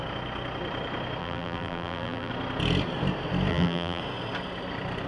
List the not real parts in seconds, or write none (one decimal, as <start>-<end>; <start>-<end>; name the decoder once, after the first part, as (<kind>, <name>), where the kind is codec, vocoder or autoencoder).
1.2-2.3 (vocoder, BigVGAN v2); 3.5-4.0